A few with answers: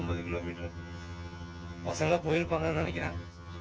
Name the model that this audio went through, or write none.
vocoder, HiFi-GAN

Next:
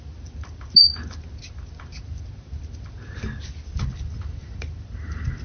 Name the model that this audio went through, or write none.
none